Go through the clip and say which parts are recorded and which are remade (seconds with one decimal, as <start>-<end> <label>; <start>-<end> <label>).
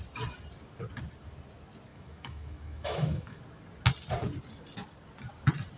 0.0-1.9 recorded; 1.9-3.4 remade; 3.4-5.8 recorded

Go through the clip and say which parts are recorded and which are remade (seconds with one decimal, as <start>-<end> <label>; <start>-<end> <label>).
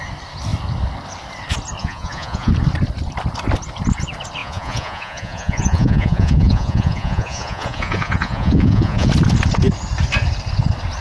0.0-1.8 recorded; 1.8-2.5 remade; 2.5-4.4 recorded; 4.4-9.1 remade; 9.1-11.0 recorded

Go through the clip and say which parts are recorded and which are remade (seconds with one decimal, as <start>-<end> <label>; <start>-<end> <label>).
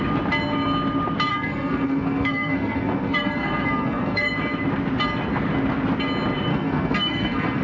0.0-1.3 recorded; 1.3-4.3 remade; 4.3-6.5 recorded; 6.5-7.6 remade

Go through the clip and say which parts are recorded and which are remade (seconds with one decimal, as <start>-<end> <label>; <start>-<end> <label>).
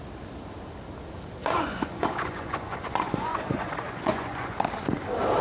0.0-1.4 recorded; 1.4-4.6 remade; 4.6-5.4 recorded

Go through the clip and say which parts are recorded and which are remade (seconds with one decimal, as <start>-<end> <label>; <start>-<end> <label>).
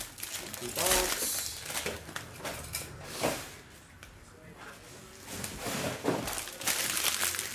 0.0-7.5 recorded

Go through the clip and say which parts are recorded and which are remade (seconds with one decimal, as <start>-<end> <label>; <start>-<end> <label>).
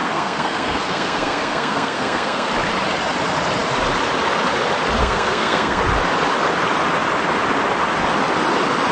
0.0-2.5 remade; 2.5-5.0 recorded; 5.0-5.8 remade; 5.8-8.9 recorded